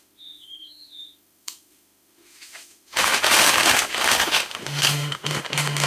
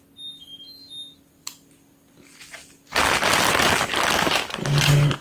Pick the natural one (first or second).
second